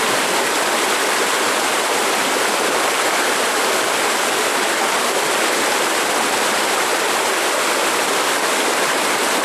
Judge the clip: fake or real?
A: real